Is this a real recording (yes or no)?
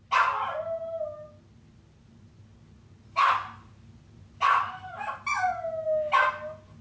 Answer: yes